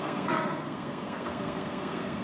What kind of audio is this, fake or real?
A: fake